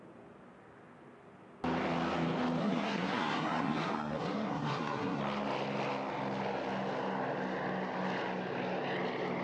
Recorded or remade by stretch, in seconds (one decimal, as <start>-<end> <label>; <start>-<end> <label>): 0.0-2.6 recorded; 2.6-5.2 remade; 5.2-9.4 recorded